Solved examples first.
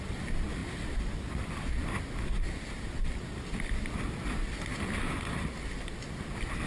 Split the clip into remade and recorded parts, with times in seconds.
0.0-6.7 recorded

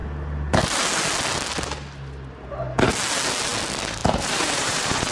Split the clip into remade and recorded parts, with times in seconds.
0.0-4.0 recorded; 4.0-5.1 remade

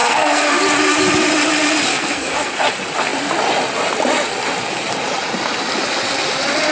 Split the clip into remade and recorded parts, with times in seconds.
0.0-0.6 remade; 0.6-1.9 recorded; 1.9-2.5 remade; 2.5-6.7 recorded

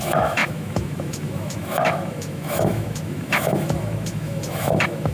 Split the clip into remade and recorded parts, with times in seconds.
0.0-5.1 remade

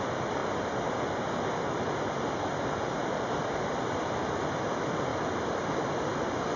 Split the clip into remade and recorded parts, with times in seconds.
0.0-6.6 recorded